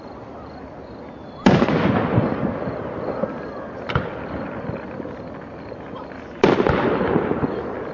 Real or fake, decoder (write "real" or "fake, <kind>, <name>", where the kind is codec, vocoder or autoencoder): real